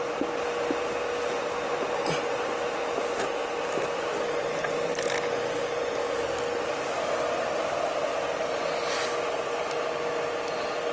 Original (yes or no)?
yes